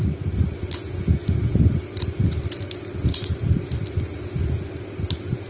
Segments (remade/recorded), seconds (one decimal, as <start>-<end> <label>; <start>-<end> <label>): 0.0-5.5 recorded